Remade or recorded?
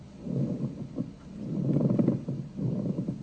recorded